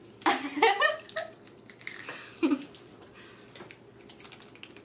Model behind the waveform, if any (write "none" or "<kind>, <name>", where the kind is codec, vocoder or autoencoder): none